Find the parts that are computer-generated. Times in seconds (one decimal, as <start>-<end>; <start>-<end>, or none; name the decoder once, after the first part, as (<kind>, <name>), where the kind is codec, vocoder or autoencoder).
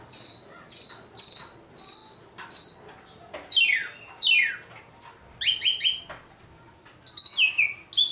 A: none